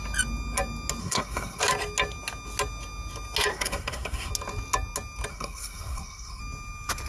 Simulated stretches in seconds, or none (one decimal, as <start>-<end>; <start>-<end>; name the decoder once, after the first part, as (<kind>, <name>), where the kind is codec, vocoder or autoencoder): 1.0-1.6 (codec, SNAC); 3.5-4.3; 5.3-6.4